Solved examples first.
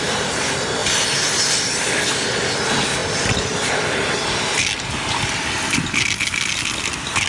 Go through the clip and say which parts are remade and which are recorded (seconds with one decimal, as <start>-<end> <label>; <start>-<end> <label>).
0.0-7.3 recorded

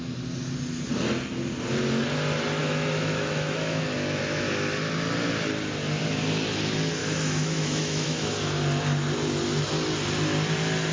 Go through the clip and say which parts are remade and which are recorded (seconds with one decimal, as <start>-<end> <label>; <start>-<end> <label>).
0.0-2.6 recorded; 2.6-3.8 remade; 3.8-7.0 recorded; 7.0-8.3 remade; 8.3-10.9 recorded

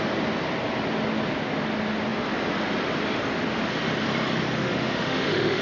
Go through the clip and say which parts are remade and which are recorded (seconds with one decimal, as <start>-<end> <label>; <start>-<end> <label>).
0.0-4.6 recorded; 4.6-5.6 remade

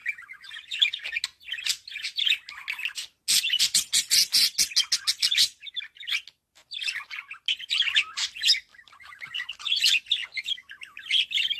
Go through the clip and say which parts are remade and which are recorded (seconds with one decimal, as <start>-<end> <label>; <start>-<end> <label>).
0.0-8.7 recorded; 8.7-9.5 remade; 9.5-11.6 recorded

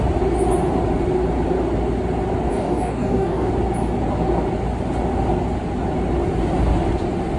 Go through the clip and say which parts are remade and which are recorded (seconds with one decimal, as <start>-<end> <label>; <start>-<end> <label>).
0.0-2.5 recorded; 2.5-3.5 remade; 3.5-7.4 recorded

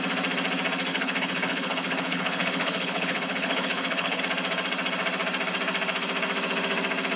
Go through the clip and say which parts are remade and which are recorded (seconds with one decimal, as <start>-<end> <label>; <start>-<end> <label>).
0.0-0.9 recorded; 0.9-4.2 remade; 4.2-7.2 recorded